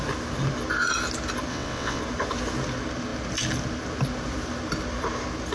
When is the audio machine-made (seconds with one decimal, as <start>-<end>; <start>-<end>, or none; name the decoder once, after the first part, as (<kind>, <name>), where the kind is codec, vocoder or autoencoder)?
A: 1.5-2.0 (vocoder, WaveNeXt)